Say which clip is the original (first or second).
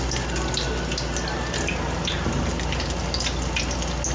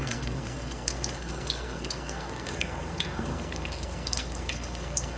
first